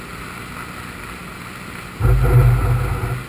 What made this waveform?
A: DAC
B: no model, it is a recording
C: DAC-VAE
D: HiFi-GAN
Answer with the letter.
B